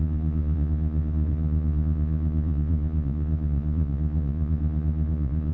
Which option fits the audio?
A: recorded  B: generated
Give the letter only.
B